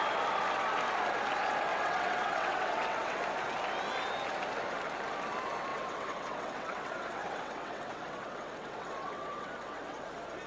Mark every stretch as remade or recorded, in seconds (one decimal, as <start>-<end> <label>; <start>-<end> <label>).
0.0-1.7 recorded; 1.7-3.2 remade; 3.2-5.7 recorded; 5.7-10.1 remade; 10.1-10.5 recorded